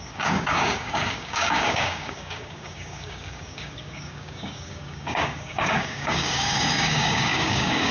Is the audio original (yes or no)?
no